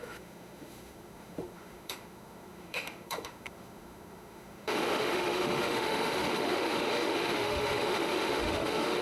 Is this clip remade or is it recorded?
remade